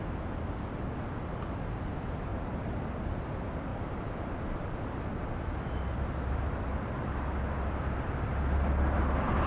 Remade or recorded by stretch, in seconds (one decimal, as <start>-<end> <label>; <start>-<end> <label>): 0.0-2.3 recorded; 2.3-2.9 remade; 2.9-9.5 recorded